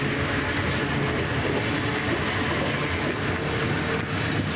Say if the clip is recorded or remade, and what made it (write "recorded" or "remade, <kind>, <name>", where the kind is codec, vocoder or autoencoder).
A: recorded